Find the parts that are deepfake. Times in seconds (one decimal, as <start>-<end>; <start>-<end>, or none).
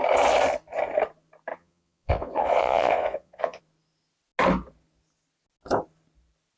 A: 1.5-3.6